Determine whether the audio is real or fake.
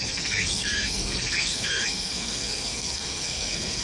fake